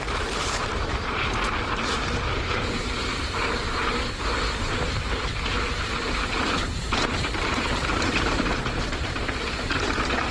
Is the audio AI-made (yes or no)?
yes